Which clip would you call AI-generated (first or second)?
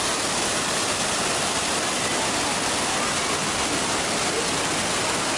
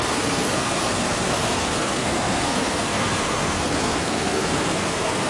second